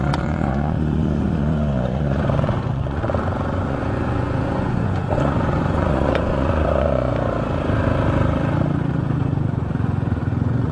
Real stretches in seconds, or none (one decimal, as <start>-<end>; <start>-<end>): 7.1-8.9